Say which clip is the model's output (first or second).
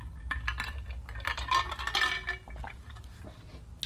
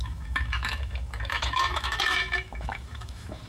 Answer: second